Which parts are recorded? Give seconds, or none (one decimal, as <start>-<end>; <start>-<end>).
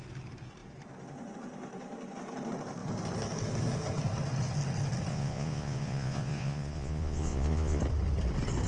0.0-5.1; 7.8-8.7